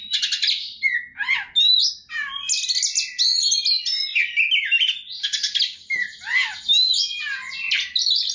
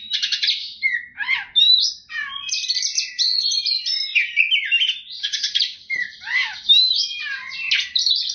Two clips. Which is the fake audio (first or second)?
second